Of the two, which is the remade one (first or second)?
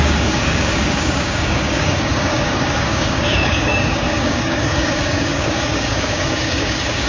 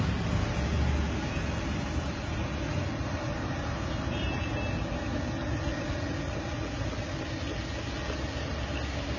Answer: first